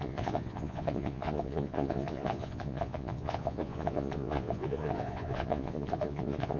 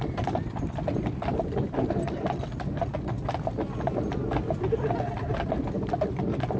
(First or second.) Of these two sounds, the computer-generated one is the first